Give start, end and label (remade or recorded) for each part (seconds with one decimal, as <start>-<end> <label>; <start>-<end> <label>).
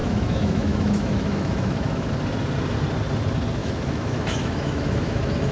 0.0-2.1 remade; 2.1-3.6 recorded; 3.6-5.5 remade